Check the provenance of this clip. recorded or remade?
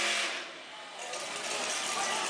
recorded